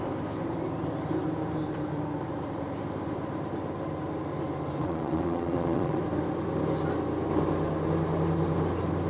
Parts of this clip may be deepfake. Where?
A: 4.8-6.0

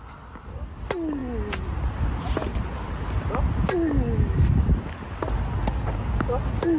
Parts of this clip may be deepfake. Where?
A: none